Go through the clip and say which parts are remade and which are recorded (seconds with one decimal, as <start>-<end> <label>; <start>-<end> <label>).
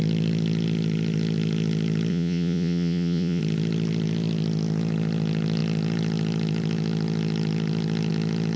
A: 0.0-2.1 recorded; 2.1-3.4 remade; 3.4-8.6 recorded